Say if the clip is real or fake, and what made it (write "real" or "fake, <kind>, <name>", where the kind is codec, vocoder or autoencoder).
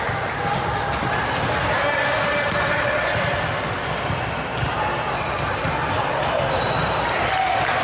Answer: real